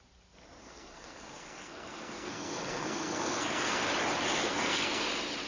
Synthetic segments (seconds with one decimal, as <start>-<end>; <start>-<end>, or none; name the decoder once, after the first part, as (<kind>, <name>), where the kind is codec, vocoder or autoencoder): 0.6-3.9 (codec, SNAC); 4.4-5.0